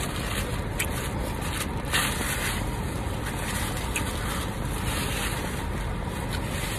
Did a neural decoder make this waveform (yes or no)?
no